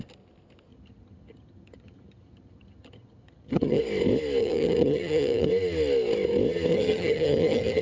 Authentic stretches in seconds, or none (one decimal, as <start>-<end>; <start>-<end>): 0.0-0.7; 3.8-4.4; 5.5-6.7